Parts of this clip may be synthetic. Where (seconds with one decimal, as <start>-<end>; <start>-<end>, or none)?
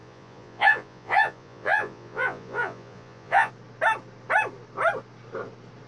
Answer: 0.0-3.5